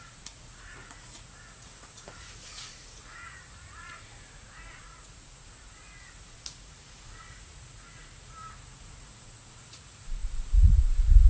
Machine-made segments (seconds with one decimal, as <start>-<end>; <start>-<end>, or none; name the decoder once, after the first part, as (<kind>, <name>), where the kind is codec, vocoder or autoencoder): 0.0-11.3 (vocoder, Vocos)